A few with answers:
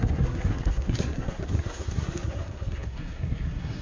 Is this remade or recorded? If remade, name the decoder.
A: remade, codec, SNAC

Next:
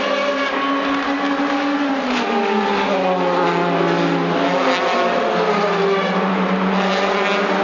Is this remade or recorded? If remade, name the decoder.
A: recorded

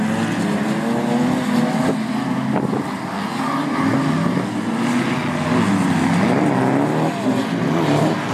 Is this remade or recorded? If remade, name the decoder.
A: recorded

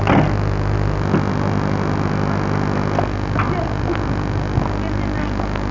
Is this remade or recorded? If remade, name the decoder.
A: recorded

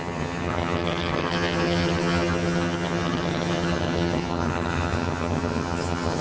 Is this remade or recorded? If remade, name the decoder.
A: remade, vocoder, HiFi-GAN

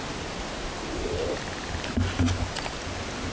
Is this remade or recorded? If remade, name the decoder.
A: recorded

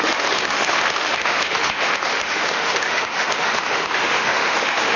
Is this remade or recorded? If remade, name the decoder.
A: remade, autoencoder, DAC-VAE